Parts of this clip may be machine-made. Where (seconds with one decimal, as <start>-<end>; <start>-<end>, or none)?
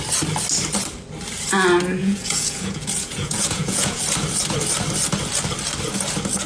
2.0-4.0